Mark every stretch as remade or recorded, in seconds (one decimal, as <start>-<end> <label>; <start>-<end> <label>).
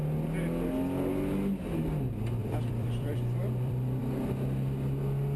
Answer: 0.0-2.4 recorded; 2.4-4.0 remade; 4.0-5.4 recorded